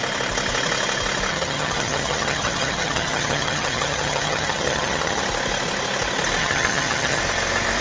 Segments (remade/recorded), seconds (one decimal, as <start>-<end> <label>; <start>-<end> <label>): 0.0-1.3 recorded; 1.3-5.2 remade; 5.2-6.4 recorded; 6.4-7.2 remade; 7.2-7.8 recorded

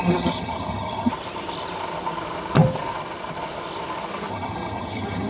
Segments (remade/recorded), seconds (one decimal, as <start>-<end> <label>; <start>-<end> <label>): 0.0-1.1 remade; 1.1-4.3 recorded; 4.3-5.3 remade

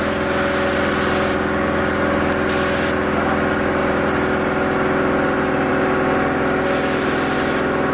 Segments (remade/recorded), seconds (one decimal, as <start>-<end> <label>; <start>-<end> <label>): 0.0-7.9 recorded